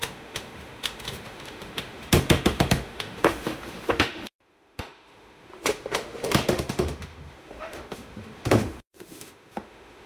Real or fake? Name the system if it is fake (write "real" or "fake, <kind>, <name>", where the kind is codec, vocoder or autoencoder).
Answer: fake, autoencoder, DAC-VAE